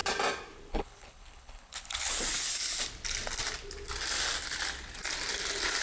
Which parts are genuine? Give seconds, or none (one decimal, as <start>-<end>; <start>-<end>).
0.0-0.7; 2.1-5.8